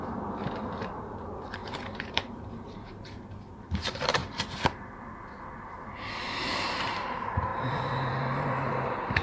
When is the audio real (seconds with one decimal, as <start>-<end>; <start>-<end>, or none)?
none